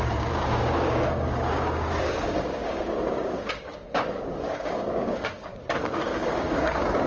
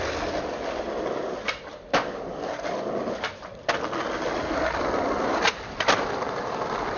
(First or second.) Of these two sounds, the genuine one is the second